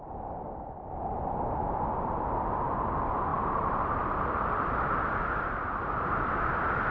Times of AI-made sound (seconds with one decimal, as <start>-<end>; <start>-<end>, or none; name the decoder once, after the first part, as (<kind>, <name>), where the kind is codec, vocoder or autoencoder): 3.3-4.0 (vocoder, BigVGAN v2)